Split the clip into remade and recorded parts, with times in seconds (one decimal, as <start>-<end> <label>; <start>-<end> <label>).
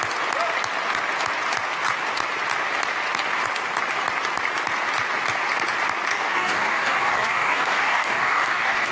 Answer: 0.0-6.1 recorded; 6.1-8.9 remade